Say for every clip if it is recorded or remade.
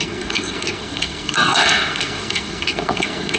remade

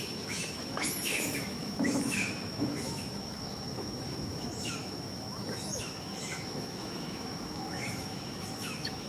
remade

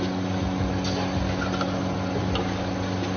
recorded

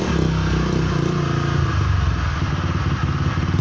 recorded